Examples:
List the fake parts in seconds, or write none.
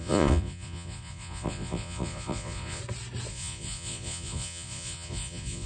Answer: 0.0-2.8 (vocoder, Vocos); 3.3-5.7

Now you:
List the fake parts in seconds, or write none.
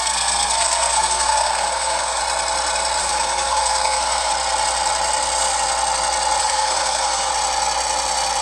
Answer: 0.0-2.2 (codec, SNAC); 3.0-4.3; 6.4-7.3